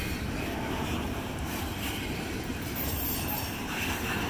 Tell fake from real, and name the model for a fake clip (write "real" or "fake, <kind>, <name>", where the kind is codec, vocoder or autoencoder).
fake, vocoder, BigVGAN v2